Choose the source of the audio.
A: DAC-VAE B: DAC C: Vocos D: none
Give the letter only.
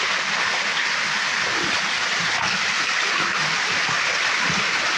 D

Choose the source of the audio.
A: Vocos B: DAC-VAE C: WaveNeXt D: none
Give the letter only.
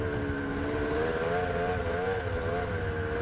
D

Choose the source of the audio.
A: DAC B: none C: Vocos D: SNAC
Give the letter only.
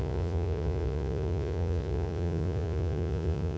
C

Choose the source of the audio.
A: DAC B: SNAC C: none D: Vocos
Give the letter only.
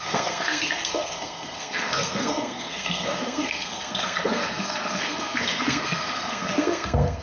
B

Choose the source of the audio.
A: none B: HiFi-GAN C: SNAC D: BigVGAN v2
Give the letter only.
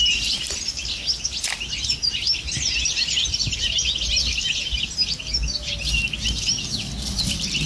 A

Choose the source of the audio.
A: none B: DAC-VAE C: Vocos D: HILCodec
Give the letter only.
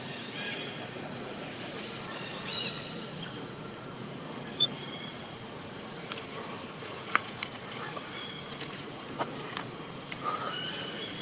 C